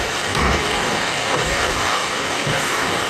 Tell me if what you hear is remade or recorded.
remade